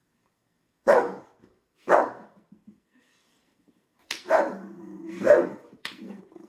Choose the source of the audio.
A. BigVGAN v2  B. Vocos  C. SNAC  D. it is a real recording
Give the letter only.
C